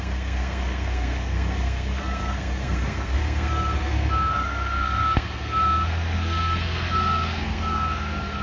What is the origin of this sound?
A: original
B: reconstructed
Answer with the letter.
B